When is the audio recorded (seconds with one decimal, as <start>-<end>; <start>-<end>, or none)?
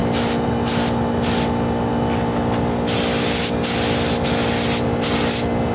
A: 0.0-5.7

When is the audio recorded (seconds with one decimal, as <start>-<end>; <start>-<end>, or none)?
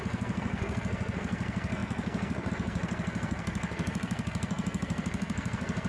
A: none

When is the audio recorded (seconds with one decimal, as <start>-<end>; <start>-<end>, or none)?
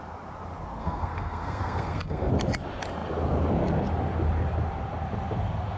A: 0.0-0.8; 2.3-5.8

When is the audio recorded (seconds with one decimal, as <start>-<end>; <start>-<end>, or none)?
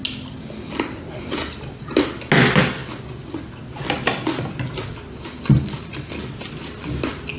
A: 0.0-7.4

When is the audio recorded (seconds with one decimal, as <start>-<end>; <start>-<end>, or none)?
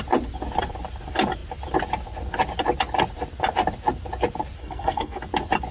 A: 0.0-4.6; 5.2-5.7